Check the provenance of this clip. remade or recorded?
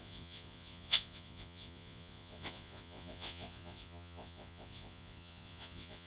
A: remade